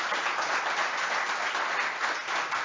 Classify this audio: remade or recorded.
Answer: recorded